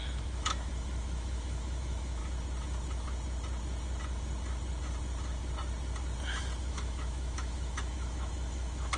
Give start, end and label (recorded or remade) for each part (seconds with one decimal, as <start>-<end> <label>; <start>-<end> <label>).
0.0-2.2 remade; 2.2-6.7 recorded; 6.7-9.0 remade